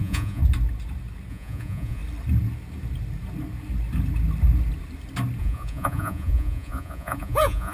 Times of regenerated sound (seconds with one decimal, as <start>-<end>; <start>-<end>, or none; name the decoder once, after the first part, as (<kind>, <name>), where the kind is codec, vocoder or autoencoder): 0.0-0.4 (vocoder, Vocos); 1.3-2.0; 5.4-7.7

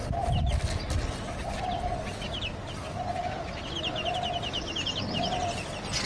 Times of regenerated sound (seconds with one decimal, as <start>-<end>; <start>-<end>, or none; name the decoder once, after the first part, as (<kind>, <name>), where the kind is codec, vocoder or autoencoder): none

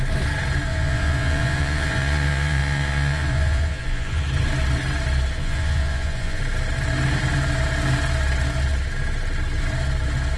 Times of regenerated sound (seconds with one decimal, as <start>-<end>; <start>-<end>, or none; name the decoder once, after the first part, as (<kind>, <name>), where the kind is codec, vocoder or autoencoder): 0.7-4.2 (vocoder, Vocos); 5.4-6.4

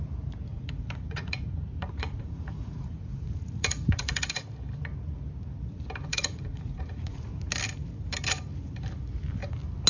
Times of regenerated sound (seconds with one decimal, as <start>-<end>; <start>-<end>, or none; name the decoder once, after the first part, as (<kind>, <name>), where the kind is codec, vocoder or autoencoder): 0.5-4.4 (vocoder, Vocos); 6.1-7.3